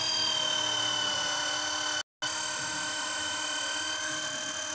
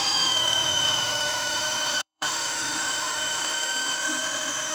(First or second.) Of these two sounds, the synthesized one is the second